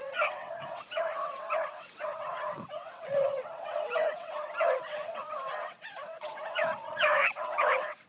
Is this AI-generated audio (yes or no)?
yes